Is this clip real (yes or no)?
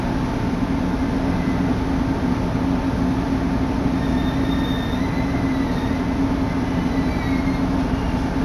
yes